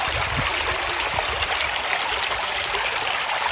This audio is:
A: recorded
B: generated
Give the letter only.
A